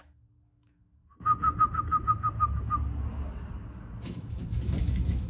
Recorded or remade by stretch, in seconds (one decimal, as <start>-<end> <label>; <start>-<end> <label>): 0.0-1.0 remade; 1.0-3.8 recorded; 3.8-5.3 remade